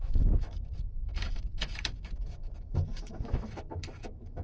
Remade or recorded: remade